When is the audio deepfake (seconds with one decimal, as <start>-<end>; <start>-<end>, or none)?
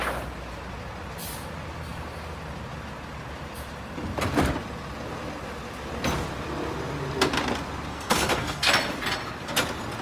7.9-8.7